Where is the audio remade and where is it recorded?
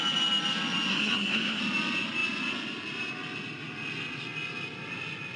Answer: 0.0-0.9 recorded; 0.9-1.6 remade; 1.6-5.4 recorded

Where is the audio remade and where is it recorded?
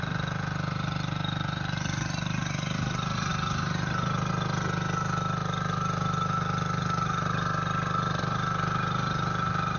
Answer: 0.0-9.8 recorded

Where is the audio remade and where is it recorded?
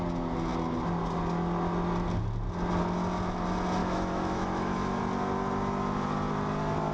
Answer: 0.0-3.8 recorded; 3.8-5.0 remade; 5.0-6.9 recorded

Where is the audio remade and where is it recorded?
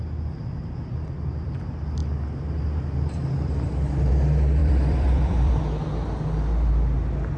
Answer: 0.0-4.6 recorded; 4.6-5.6 remade; 5.6-7.4 recorded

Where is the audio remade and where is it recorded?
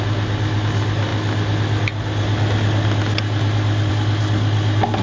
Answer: 0.0-5.0 recorded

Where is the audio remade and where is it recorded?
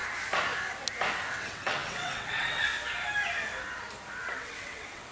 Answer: 0.0-1.3 recorded; 1.3-2.7 remade; 2.7-4.3 recorded; 4.3-5.1 remade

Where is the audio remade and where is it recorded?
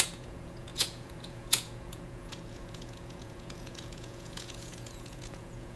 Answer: 0.0-5.8 remade